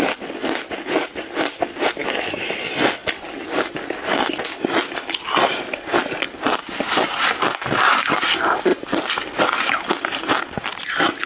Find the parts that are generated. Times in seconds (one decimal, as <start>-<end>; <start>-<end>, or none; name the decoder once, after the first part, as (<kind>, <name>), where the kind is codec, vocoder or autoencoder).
none

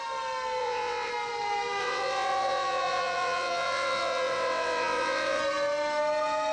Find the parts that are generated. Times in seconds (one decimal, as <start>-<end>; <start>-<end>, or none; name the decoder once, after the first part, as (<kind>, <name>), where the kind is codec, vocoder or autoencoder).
0.6-1.1 (vocoder, WaveNeXt); 1.8-5.4